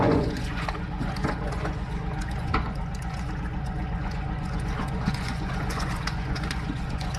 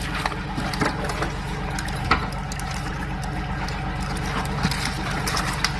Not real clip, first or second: first